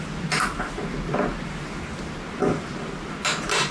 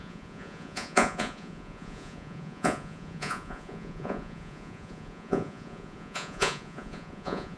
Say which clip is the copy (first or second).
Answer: second